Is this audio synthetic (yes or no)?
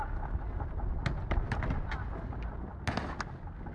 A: no